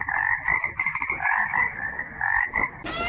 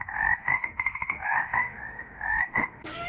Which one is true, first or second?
first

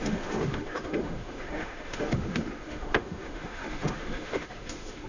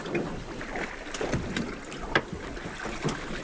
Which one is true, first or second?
second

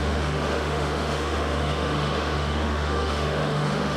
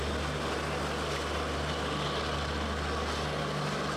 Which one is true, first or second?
second